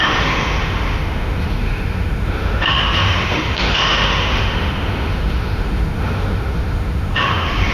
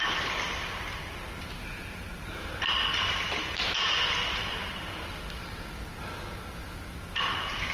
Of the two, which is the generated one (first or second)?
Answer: first